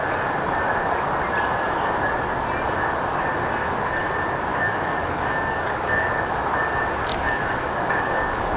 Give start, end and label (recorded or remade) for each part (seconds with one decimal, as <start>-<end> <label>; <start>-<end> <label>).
0.0-4.5 recorded; 4.5-6.3 remade; 6.3-7.1 recorded; 7.1-8.6 remade